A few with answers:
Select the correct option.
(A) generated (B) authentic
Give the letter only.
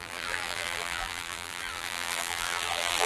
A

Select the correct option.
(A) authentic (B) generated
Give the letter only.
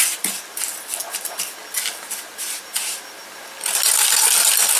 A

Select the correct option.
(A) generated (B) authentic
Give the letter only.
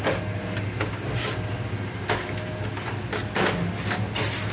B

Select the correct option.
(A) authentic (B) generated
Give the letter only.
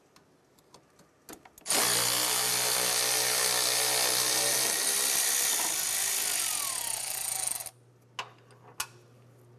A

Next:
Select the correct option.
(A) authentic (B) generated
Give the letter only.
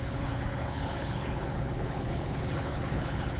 B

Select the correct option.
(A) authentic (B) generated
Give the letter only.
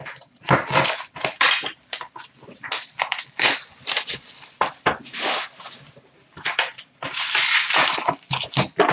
A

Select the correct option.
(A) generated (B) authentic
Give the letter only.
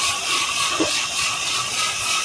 A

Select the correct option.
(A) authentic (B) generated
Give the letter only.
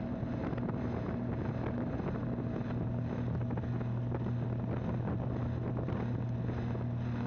A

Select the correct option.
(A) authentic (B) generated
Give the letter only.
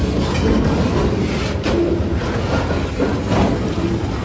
A